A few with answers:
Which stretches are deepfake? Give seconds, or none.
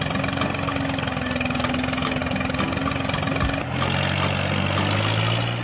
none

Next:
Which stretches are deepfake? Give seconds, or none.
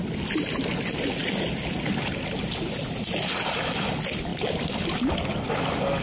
none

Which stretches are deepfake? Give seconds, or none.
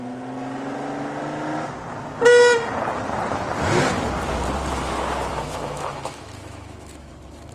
5.3-7.1 (autoencoder, DAC-VAE)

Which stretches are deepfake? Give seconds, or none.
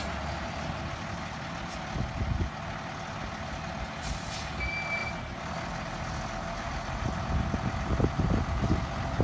none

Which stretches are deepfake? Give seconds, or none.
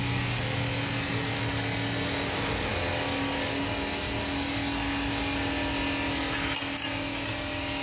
none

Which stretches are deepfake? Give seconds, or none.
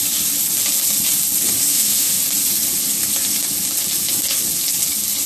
1.7-2.2 (autoencoder, DAC-VAE)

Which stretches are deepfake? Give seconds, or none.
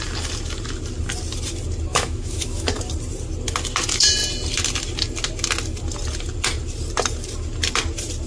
1.9-2.7 (autoencoder, DAC-VAE)